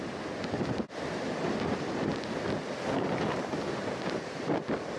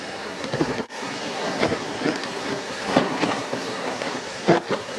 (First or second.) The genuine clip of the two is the first